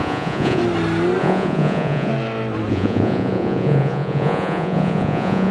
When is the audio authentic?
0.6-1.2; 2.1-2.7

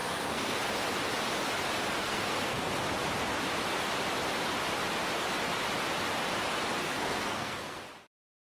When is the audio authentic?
0.7-2.0; 2.7-6.8; 7.8-8.6

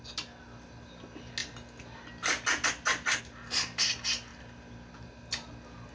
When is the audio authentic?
0.0-5.9

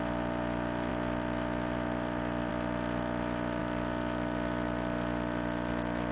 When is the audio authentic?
0.0-6.1

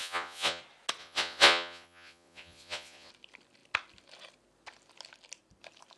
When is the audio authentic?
0.6-1.0; 3.1-6.0

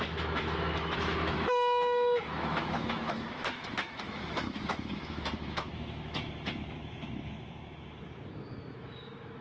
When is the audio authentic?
none